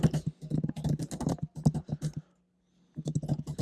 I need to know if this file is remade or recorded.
recorded